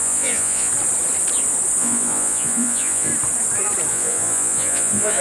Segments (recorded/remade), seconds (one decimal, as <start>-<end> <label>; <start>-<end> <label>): 0.0-0.7 remade; 0.7-1.8 recorded; 1.8-3.1 remade; 3.1-3.9 recorded; 3.9-5.2 remade